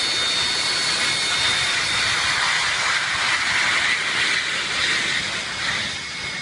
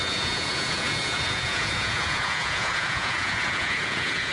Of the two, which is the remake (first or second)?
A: second